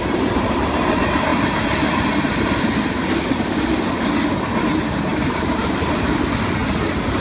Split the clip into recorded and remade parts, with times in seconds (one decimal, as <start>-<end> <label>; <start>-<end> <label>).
0.0-7.2 recorded